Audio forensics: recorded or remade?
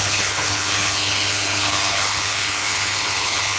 remade